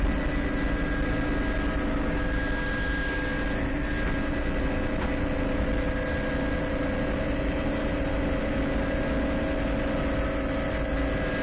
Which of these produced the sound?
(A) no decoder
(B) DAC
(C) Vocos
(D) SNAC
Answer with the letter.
A